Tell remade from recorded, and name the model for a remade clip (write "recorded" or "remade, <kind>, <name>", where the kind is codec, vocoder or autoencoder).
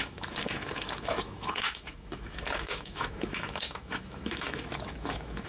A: remade, autoencoder, DAC-VAE